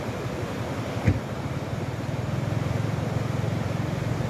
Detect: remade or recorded recorded